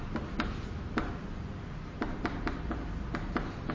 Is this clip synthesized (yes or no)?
yes